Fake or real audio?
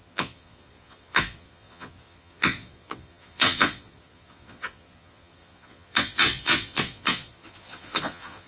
fake